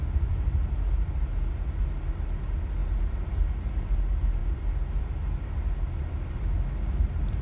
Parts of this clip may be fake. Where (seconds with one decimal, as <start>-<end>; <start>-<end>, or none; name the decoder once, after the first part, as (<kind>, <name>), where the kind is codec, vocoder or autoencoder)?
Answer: none